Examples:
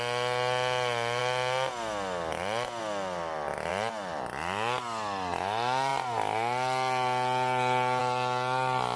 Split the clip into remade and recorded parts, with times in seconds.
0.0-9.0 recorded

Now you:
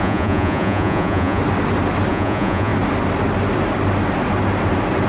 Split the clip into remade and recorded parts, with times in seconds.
0.0-1.4 remade; 1.4-2.1 recorded; 2.1-2.7 remade; 2.7-5.1 recorded

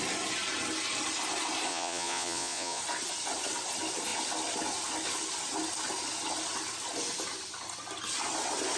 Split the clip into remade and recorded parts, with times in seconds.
0.0-1.7 recorded; 1.7-2.8 remade; 2.8-8.8 recorded

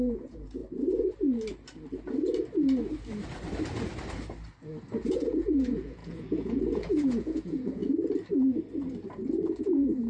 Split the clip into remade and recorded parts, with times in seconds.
0.0-0.6 remade; 0.6-5.1 recorded; 5.1-7.8 remade; 7.8-9.6 recorded; 9.6-10.1 remade

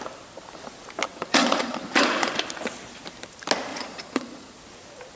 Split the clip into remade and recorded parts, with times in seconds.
0.0-1.1 recorded; 1.1-2.3 remade; 2.3-3.7 recorded; 3.7-4.5 remade; 4.5-5.2 recorded

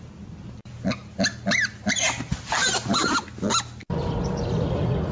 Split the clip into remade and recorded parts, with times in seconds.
0.0-5.1 recorded

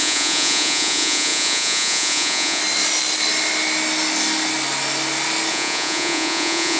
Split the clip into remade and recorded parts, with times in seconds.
0.0-2.6 remade; 2.6-5.5 recorded; 5.5-6.8 remade

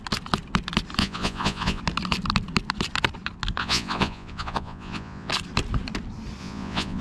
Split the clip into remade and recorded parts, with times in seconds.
0.0-1.0 recorded; 1.0-1.8 remade; 1.8-3.6 recorded; 3.6-5.3 remade; 5.3-6.4 recorded; 6.4-7.0 remade